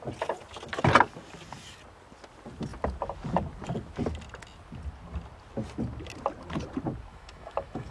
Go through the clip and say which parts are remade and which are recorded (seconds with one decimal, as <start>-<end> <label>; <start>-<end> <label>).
0.0-7.1 recorded; 7.1-7.9 remade